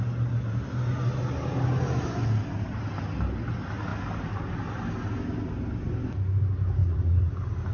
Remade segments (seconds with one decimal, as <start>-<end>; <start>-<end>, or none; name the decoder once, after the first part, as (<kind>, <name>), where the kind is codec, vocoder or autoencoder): 6.8-7.3 (vocoder, Vocos)